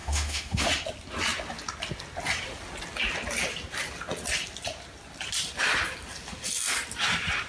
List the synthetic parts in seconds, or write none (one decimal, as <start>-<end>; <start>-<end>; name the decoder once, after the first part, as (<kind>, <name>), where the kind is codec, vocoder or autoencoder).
0.0-0.7 (autoencoder, DAC-VAE)

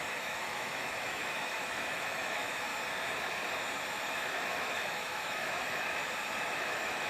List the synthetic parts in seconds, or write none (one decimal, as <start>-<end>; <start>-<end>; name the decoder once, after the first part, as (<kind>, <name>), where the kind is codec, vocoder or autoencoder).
0.0-2.7 (autoencoder, DAC-VAE); 4.1-6.0; 6.5-7.1

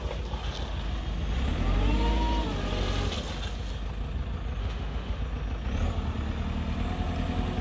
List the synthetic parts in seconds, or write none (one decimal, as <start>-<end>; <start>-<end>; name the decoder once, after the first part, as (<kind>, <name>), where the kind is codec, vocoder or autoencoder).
4.6-5.2 (autoencoder, DAC-VAE)

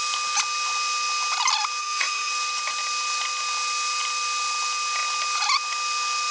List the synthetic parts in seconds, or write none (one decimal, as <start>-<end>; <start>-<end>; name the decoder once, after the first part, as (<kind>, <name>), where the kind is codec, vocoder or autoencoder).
1.8-2.3 (autoencoder, DAC-VAE)

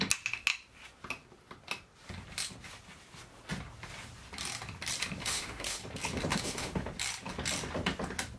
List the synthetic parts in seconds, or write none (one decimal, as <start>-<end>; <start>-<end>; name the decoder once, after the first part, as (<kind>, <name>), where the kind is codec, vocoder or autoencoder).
5.2-5.8 (autoencoder, DAC-VAE); 6.3-6.9

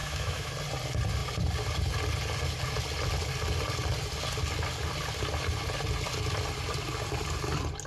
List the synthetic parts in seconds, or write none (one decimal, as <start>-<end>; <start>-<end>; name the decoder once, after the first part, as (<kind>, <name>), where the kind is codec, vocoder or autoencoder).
0.0-0.5 (autoencoder, DAC-VAE)

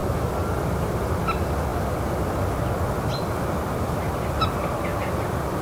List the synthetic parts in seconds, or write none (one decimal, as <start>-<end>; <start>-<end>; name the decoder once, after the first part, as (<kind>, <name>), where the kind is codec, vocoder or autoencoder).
none